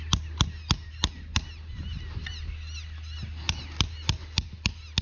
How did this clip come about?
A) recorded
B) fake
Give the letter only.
A